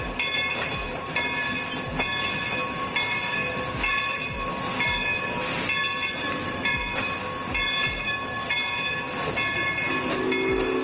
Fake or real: real